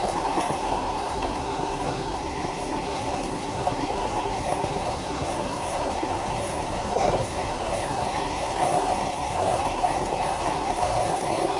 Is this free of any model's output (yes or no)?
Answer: no